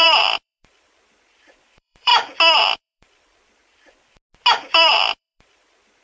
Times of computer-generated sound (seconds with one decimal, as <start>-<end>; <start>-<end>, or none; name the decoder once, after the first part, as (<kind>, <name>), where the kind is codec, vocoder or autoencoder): 0.0-2.1 (vocoder, BigVGAN v2); 2.7-3.6; 4.6-6.0